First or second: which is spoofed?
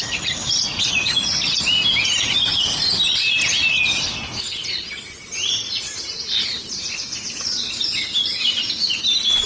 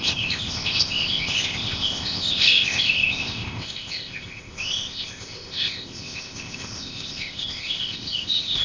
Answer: second